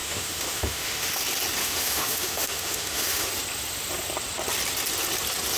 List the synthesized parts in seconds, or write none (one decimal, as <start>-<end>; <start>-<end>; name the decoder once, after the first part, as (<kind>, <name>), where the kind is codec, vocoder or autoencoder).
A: 0.0-1.2 (autoencoder, DAC-VAE); 1.6-3.3